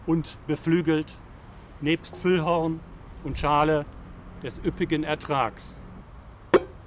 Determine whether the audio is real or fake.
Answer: real